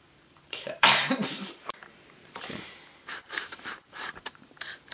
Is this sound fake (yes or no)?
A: yes